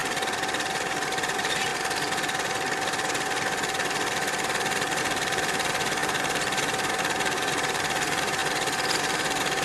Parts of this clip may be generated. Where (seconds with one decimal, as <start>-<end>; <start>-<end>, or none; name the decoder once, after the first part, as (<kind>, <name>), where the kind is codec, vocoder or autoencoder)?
0.7-1.7 (vocoder, BigVGAN v2); 5.0-8.4; 9.0-9.6